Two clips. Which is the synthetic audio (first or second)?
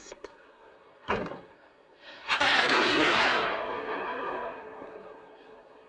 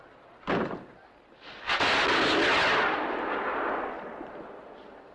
first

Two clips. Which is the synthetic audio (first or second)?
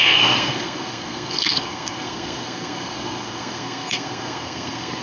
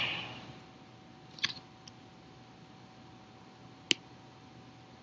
first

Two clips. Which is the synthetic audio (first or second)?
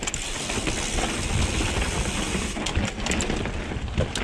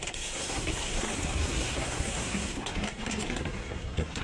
second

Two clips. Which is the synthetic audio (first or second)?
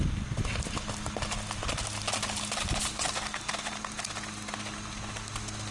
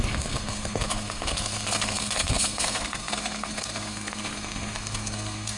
second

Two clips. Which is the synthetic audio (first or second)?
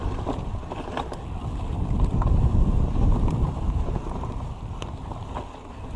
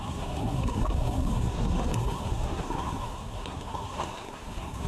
second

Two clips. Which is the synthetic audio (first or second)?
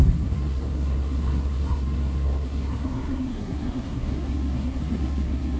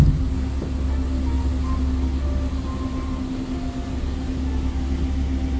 first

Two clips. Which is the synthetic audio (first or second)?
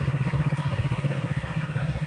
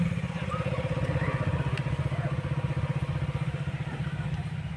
first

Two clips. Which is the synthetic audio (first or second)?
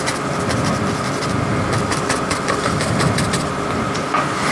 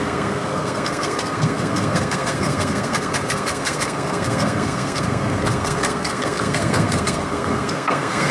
second